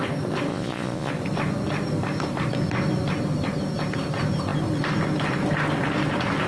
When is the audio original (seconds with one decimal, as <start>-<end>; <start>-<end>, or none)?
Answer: 0.0-0.5; 1.1-6.5